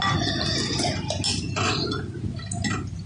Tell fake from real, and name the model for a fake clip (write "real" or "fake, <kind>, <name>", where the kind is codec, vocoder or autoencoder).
real